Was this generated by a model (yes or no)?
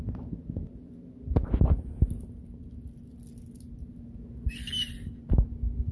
no